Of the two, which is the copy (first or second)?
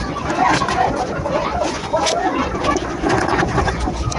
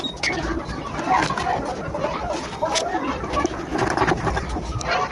first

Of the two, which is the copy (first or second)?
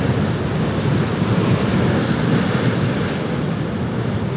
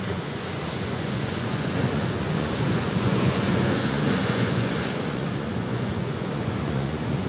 second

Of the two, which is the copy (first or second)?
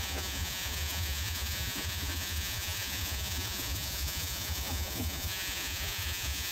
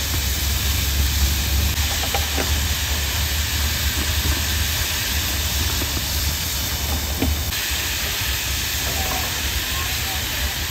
first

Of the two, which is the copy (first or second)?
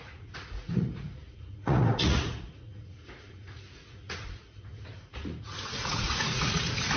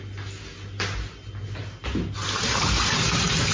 first